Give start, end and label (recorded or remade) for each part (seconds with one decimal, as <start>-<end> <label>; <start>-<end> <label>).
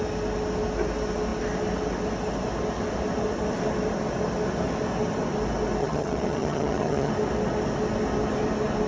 0.0-5.8 recorded; 5.8-7.1 remade; 7.1-8.9 recorded